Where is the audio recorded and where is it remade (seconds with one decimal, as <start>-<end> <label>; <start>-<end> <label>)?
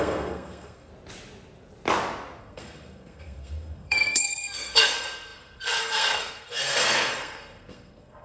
0.0-0.9 remade; 0.9-2.4 recorded; 2.4-8.2 remade